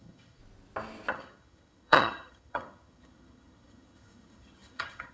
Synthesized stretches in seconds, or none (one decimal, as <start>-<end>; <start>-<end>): 0.0-0.4; 1.1-5.1